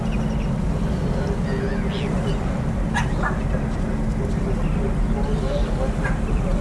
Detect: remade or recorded recorded